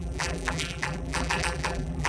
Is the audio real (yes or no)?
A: no